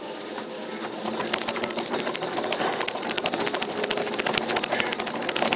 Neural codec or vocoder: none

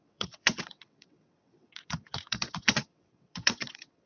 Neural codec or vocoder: vocoder, WaveNeXt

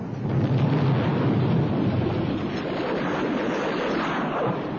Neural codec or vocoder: none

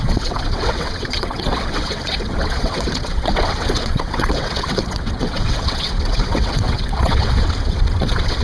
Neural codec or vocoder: vocoder, WaveNeXt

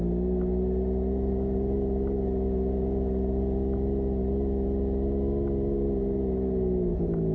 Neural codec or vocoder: none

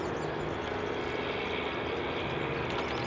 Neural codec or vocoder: none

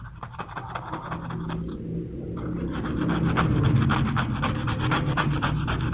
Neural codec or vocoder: none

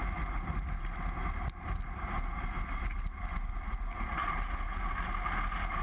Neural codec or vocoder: none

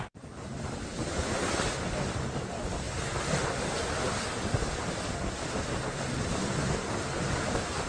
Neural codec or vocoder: none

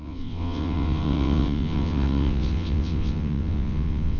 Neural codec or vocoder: vocoder, WaveNeXt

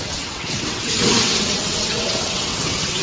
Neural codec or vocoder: vocoder, WaveNeXt